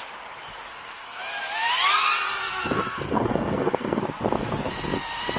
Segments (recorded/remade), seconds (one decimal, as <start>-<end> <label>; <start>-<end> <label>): 0.0-0.7 recorded; 0.7-1.2 remade; 1.2-2.4 recorded; 2.4-4.0 remade; 4.0-5.4 recorded